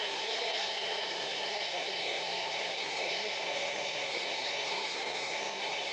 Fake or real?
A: fake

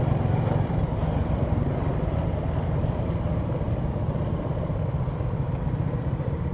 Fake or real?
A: real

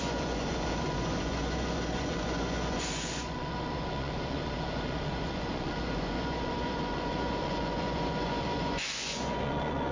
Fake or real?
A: fake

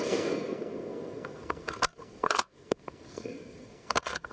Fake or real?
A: fake